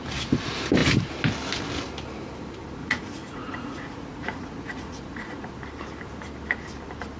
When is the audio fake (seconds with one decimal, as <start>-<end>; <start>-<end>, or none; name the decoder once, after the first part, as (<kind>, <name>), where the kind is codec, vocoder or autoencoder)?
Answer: 2.8-5.5 (vocoder, Vocos)

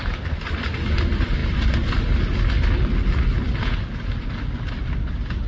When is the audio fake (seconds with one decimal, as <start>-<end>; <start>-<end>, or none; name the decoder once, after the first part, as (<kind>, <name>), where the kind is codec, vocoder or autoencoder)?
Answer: none

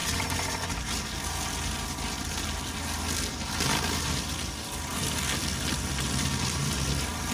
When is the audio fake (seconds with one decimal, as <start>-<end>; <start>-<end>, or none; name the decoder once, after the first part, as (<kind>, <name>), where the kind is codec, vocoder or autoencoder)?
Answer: none

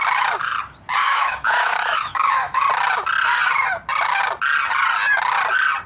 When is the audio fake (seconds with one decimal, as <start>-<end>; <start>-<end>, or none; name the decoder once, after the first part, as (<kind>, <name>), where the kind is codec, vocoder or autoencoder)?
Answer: 1.0-2.6 (autoencoder, DAC-VAE)

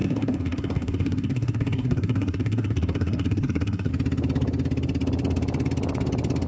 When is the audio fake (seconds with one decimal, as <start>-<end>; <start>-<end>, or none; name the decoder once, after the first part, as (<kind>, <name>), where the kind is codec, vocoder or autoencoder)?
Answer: 0.0-3.9 (codec, SNAC)

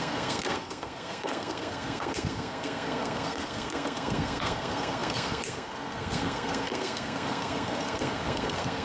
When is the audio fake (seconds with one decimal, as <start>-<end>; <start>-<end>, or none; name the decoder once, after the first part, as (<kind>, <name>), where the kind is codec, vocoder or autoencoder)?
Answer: 0.0-8.8 (codec, SNAC)

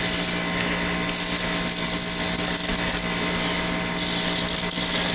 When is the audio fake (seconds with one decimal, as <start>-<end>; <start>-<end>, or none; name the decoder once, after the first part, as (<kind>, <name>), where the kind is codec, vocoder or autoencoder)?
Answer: none

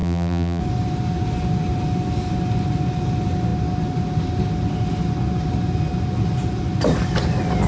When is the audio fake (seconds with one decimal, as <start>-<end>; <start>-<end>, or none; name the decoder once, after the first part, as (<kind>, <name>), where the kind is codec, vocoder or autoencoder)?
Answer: 0.0-0.6 (vocoder, BigVGAN v2)